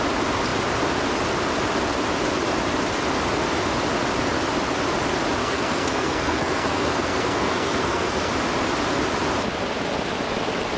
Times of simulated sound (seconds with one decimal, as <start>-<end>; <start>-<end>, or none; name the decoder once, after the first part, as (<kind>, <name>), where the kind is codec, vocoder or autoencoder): 5.4-8.3 (codec, SNAC)

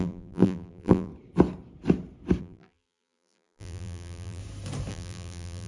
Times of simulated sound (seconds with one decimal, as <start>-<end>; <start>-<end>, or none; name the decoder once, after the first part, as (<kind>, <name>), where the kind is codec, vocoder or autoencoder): 0.0-1.1 (vocoder, BigVGAN v2); 2.4-4.4; 4.9-5.7